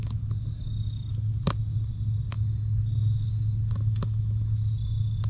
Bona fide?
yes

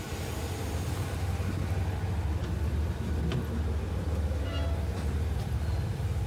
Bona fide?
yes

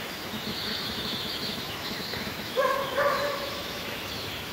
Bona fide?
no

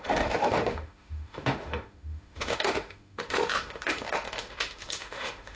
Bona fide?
no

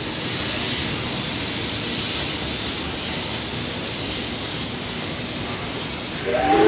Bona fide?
yes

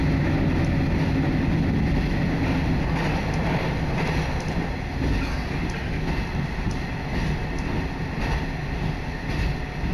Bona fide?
yes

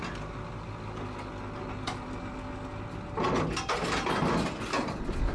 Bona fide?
yes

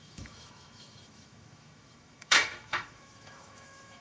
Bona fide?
no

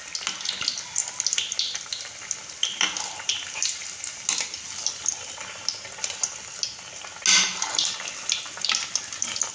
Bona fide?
yes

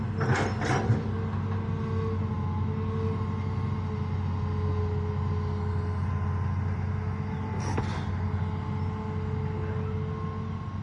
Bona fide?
yes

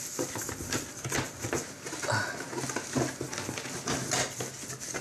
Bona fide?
yes